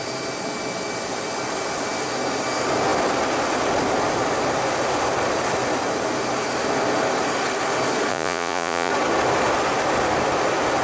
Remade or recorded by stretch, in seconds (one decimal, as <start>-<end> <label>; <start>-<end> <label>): 0.0-8.1 recorded; 8.1-8.9 remade; 8.9-10.8 recorded